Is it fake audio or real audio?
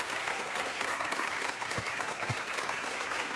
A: fake